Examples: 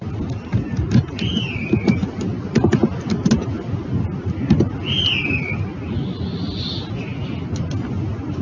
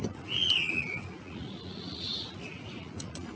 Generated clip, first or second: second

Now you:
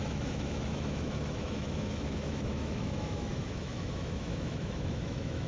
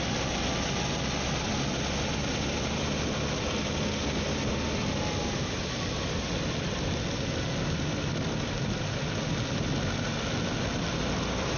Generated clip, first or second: first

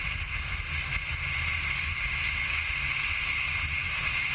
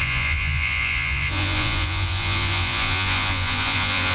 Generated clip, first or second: second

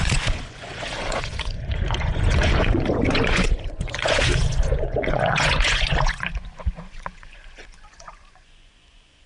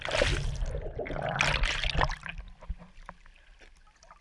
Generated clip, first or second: first